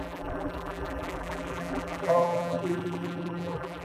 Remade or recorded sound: remade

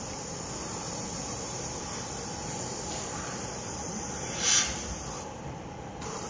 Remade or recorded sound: recorded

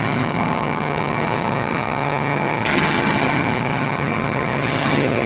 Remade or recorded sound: remade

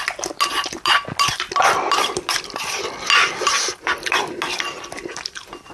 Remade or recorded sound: recorded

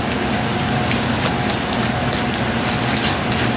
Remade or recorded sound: recorded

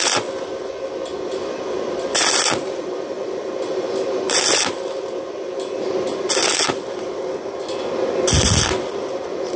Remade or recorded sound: recorded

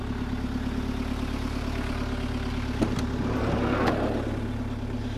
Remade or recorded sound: recorded